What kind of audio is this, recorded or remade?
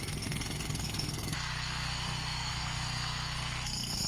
remade